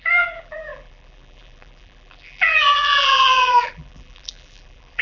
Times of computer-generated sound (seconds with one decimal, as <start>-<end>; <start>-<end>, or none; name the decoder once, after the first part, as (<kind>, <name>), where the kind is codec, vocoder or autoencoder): 0.0-5.0 (vocoder, BigVGAN v2)